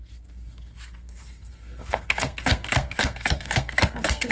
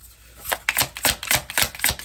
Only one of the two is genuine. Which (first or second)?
second